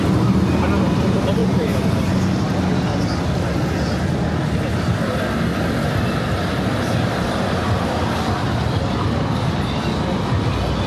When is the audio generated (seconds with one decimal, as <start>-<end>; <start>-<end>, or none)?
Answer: 1.4-2.6; 5.5-10.1

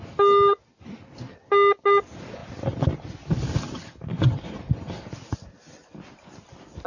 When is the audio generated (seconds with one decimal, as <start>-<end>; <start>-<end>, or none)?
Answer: none

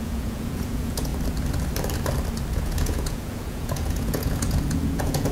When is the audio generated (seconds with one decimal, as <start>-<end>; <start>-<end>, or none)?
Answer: 0.0-1.1; 2.5-5.3

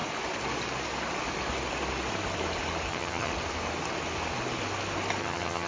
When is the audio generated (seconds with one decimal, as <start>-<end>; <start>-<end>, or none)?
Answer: 2.9-3.3; 5.2-5.7

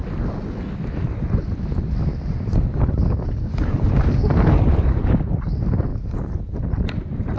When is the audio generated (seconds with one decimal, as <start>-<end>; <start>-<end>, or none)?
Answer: 0.0-5.9; 6.5-7.4